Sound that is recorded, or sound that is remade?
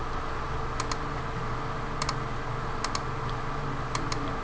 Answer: recorded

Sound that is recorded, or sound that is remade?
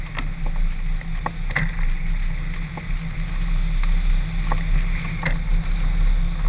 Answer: recorded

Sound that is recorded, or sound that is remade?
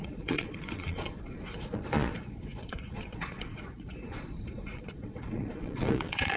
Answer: remade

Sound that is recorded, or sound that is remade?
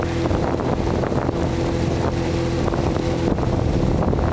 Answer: recorded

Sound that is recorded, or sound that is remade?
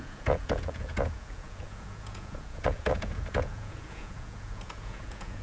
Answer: remade